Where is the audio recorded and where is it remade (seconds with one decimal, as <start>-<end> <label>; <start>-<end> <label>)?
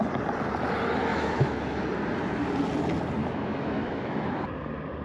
0.0-1.1 recorded; 1.1-1.8 remade; 1.8-3.2 recorded; 3.2-4.4 remade; 4.4-5.0 recorded